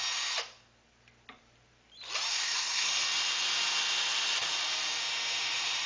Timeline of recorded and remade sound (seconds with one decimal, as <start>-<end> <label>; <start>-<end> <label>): 0.0-2.3 recorded; 2.3-2.9 remade; 2.9-5.9 recorded